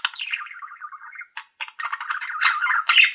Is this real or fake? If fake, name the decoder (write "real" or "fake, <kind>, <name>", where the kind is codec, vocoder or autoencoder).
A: real